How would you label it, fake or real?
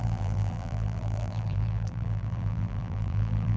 fake